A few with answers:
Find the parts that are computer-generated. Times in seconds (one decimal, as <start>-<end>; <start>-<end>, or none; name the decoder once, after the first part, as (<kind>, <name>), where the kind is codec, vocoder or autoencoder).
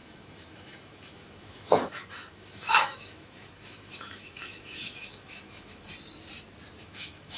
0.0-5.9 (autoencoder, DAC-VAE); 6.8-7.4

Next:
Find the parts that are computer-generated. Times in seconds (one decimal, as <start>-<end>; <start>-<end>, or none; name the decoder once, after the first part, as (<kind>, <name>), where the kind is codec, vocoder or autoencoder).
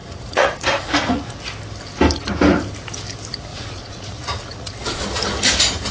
0.0-1.3 (vocoder, Vocos); 3.5-4.7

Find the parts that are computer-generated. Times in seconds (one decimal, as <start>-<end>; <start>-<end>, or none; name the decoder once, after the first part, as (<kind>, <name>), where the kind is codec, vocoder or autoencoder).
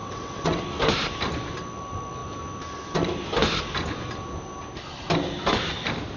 0.0-0.6 (vocoder, WaveNeXt)